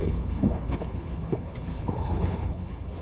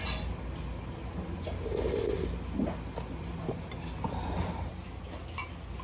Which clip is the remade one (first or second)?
first